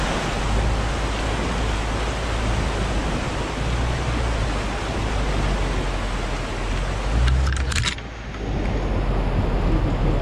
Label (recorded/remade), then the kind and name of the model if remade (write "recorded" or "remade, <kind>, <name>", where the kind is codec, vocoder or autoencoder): recorded